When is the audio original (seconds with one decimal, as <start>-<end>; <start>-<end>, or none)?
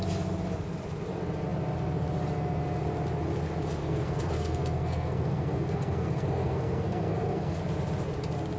0.0-3.8; 7.6-8.6